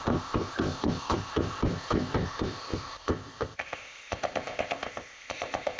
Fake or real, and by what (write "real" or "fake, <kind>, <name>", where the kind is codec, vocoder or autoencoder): fake, codec, ZipCodec